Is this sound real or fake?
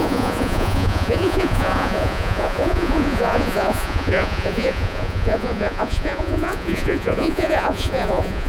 fake